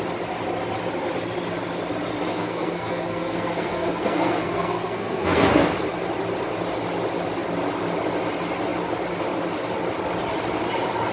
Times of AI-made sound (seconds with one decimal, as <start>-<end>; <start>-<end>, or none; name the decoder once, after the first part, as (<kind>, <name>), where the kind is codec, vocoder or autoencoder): 2.3-5.7 (codec, SNAC)